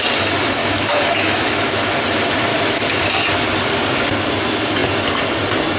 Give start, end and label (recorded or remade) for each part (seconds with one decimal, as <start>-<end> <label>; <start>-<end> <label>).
0.0-0.6 recorded; 0.6-1.9 remade; 1.9-2.5 recorded; 2.5-3.0 remade; 3.0-5.8 recorded